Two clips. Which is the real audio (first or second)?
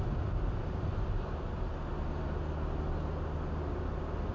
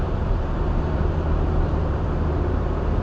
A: first